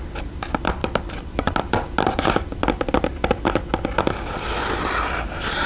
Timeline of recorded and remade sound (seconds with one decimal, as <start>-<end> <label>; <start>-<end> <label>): 0.0-5.7 recorded